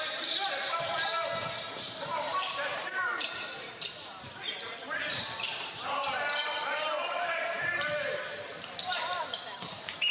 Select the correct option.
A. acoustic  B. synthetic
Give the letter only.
B